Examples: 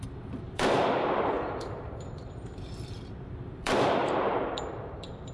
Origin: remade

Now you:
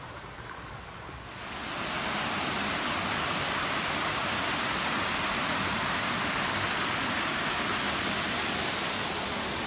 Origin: recorded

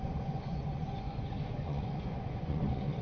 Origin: remade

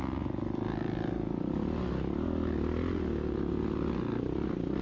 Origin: recorded